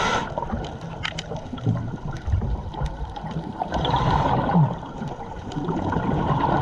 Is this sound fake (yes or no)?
yes